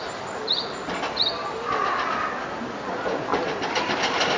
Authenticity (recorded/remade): recorded